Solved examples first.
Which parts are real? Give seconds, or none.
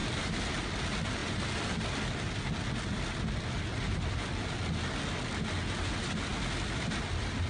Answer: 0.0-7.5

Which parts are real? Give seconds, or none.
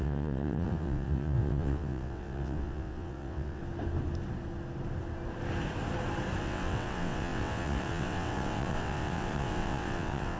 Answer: 3.6-6.4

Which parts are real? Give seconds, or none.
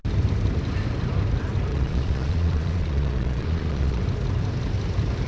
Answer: 0.0-1.7; 4.0-5.3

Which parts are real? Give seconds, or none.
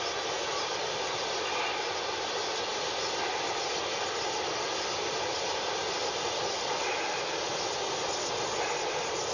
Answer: 0.0-0.8; 1.5-9.3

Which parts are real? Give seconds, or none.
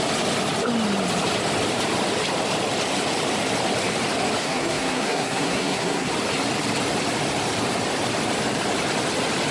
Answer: 0.0-4.4; 6.1-9.5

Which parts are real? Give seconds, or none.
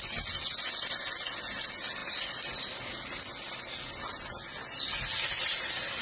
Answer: 0.0-6.0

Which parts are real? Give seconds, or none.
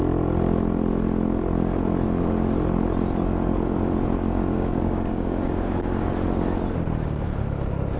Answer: 0.0-4.5; 6.1-8.0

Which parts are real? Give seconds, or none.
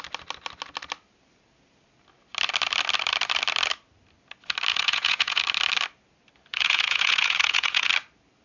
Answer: 0.0-4.7; 5.4-6.5; 7.9-8.4